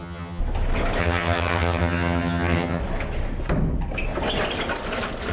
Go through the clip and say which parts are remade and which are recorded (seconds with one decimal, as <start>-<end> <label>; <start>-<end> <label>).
0.0-0.4 remade; 0.4-1.0 recorded; 1.0-2.8 remade; 2.8-5.3 recorded